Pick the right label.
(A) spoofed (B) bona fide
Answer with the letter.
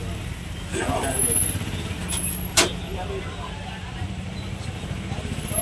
B